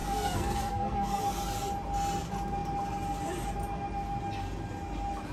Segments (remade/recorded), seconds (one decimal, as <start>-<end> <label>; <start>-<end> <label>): 0.0-1.2 remade; 1.2-5.3 recorded